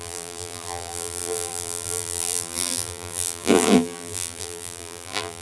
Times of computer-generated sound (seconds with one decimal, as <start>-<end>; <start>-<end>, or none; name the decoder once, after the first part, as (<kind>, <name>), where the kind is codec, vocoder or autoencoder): 0.0-5.4 (vocoder, BigVGAN v2)